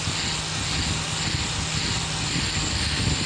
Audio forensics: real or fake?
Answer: real